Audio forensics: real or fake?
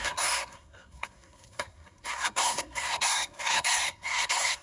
fake